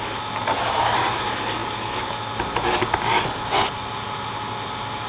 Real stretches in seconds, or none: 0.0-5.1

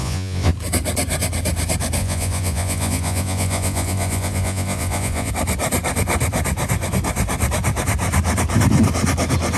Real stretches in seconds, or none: 0.5-2.0; 5.3-9.6